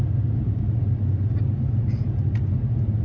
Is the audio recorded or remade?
recorded